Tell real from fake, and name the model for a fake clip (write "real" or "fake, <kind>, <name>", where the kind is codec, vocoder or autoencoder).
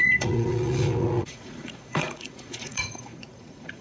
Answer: fake, vocoder, Vocos